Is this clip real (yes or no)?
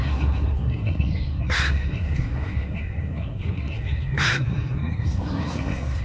no